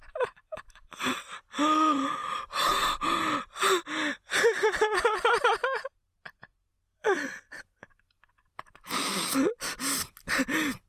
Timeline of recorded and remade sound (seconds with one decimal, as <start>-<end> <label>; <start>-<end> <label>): 0.0-10.9 recorded